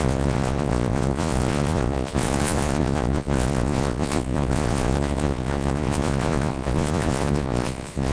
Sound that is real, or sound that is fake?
fake